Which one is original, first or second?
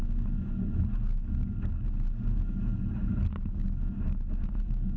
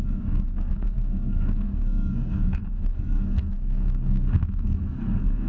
first